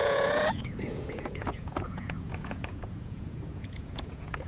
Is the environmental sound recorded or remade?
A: remade